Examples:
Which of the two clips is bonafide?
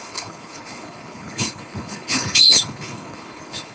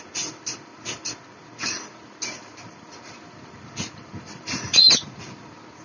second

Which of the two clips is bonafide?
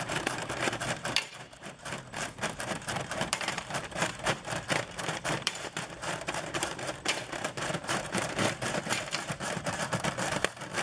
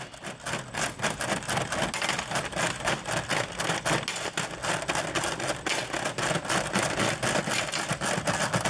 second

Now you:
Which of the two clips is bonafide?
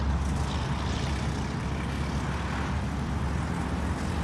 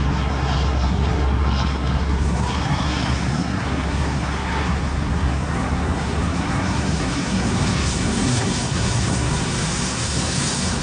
first